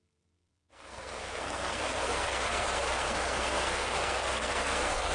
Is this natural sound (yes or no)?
no